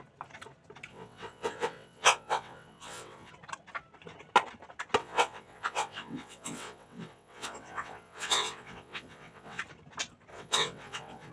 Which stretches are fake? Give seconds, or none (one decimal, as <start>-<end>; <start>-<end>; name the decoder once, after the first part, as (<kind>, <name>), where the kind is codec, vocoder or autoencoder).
0.9-3.3 (vocoder, WaveNeXt); 5.0-9.6; 10.3-11.3